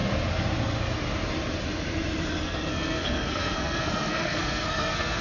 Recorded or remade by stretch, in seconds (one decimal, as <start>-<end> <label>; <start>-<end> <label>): 0.0-2.4 recorded; 2.4-5.2 remade